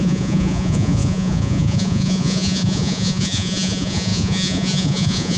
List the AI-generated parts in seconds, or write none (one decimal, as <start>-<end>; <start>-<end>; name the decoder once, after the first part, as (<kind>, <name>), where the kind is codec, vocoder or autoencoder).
0.0-5.4 (vocoder, Vocos)